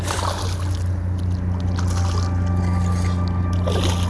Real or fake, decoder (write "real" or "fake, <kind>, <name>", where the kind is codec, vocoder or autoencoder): real